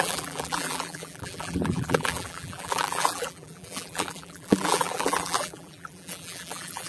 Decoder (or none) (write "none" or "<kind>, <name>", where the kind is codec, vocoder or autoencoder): vocoder, BigVGAN v2